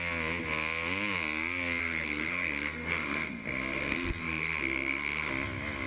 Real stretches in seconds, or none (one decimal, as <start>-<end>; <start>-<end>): 0.0-1.8; 5.3-5.9